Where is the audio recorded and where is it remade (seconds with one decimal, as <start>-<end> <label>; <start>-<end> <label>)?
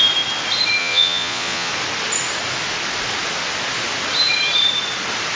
0.0-0.8 recorded; 0.8-1.7 remade; 1.7-5.4 recorded